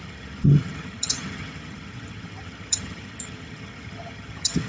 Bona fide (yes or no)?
no